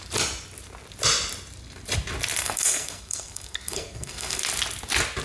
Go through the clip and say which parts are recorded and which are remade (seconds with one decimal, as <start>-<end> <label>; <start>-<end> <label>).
0.0-2.4 recorded; 2.4-4.4 remade; 4.4-5.2 recorded